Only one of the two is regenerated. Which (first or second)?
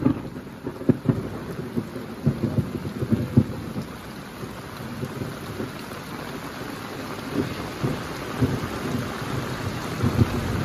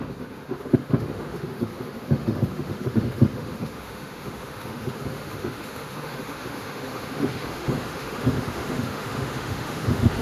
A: second